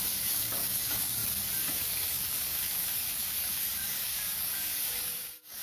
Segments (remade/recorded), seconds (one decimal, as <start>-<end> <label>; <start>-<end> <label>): 0.0-1.2 remade; 1.2-1.7 recorded; 1.7-5.6 remade